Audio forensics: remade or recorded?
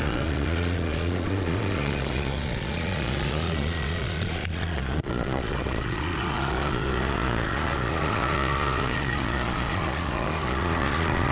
remade